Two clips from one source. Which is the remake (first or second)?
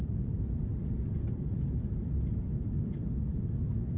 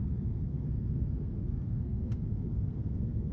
second